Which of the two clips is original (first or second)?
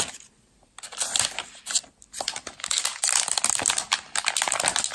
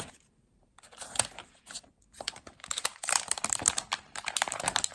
first